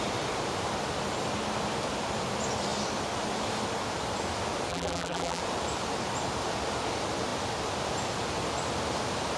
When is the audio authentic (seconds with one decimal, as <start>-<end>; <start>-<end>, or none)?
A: 0.0-4.7; 5.4-9.4